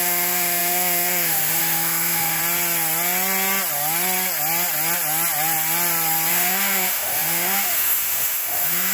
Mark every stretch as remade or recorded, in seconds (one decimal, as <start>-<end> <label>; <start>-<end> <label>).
0.0-2.4 remade; 2.4-6.3 recorded; 6.3-8.9 remade